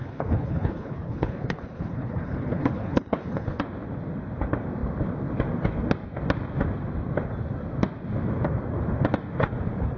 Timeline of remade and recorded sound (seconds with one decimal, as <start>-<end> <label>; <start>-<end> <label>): 0.0-3.6 remade; 3.6-10.0 recorded

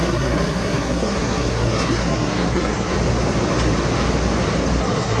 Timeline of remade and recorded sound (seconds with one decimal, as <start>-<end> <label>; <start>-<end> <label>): 0.0-2.9 remade; 2.9-4.8 recorded; 4.8-5.2 remade